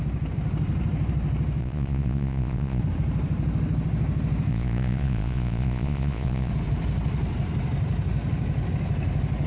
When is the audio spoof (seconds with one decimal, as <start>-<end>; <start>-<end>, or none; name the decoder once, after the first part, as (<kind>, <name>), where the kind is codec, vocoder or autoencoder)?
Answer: 1.6-2.8 (vocoder, Vocos); 4.5-6.5